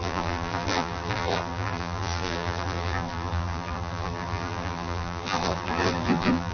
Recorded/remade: remade